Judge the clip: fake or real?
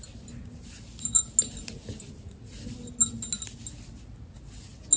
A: real